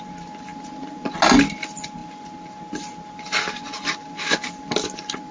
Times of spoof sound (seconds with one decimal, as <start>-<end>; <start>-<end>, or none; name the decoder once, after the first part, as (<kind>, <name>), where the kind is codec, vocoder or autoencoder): none

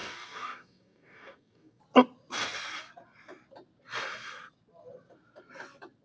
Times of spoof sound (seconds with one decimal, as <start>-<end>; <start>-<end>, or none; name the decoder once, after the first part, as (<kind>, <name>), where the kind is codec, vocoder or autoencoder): 0.0-1.8 (codec, DAC)

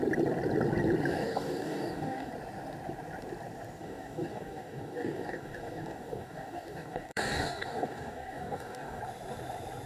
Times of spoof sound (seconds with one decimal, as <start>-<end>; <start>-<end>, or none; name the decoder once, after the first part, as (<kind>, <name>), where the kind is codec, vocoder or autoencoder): 1.1-2.3 (codec, DAC); 3.8-9.0

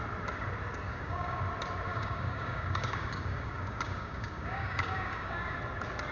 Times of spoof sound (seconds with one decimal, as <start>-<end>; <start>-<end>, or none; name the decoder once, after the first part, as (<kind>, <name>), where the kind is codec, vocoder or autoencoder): 0.9-1.4 (codec, DAC); 1.9-5.6

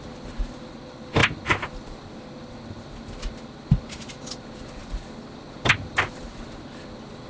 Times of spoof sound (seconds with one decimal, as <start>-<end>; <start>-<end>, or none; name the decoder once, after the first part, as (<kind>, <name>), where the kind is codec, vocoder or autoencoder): none